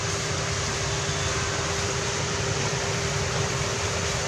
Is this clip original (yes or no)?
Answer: no